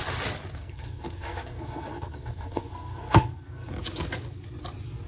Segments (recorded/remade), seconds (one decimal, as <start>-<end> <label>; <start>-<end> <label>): 0.0-0.6 recorded; 0.6-3.7 remade; 3.7-5.1 recorded